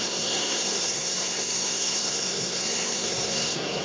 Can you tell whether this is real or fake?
fake